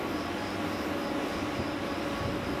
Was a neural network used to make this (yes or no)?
no